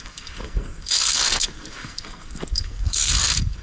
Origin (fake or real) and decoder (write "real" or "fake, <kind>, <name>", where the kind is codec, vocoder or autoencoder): fake, codec, SNAC